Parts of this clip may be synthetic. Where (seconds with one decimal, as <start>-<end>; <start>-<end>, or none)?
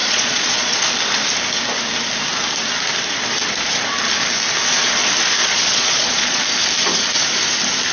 0.0-0.8; 5.4-6.4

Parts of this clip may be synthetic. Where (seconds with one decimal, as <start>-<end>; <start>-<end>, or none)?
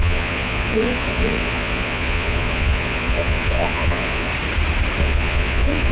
0.0-4.3; 5.0-5.9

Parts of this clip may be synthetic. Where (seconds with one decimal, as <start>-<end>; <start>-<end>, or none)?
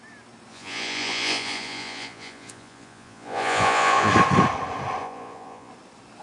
0.5-4.1; 5.0-5.7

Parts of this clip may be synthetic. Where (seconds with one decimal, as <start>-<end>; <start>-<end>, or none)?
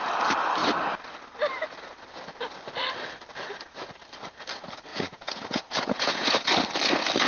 4.9-6.5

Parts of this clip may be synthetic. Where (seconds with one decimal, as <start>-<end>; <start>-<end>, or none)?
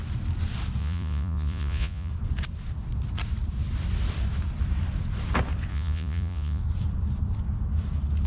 0.8-2.1; 5.7-6.6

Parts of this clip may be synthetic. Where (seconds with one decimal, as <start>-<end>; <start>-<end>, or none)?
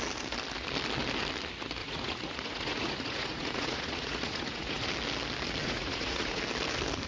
1.8-4.9; 5.6-6.4